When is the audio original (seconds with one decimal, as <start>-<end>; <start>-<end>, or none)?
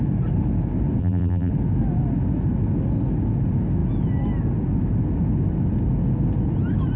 0.0-1.0; 1.5-7.0